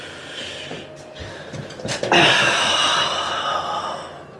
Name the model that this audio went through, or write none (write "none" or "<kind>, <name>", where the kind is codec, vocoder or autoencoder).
none